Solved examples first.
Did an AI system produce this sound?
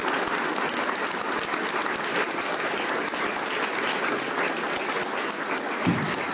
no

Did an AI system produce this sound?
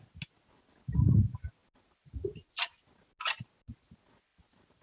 no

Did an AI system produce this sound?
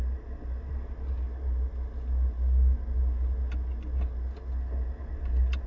no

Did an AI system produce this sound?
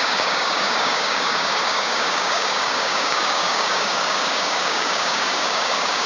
yes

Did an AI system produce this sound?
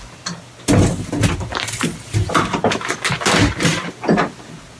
no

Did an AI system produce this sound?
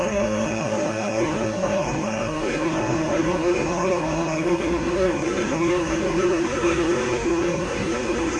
yes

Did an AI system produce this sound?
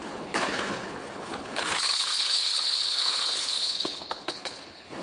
yes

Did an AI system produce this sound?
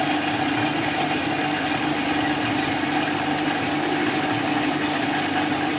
no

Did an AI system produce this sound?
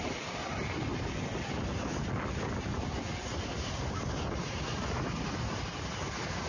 no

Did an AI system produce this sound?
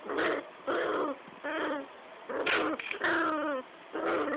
no